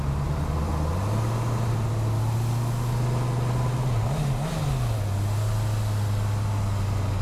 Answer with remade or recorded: recorded